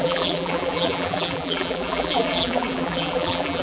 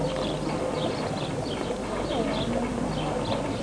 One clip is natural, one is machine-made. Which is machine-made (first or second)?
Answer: first